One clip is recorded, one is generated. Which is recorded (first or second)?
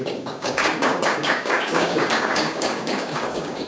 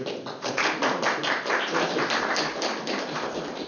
second